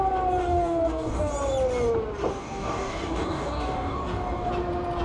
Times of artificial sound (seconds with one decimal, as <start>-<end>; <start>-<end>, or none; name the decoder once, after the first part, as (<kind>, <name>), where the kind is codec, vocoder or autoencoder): 0.4-1.3 (codec, DAC); 2.3-4.5